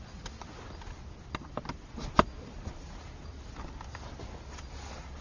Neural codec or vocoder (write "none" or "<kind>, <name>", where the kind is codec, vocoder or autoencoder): none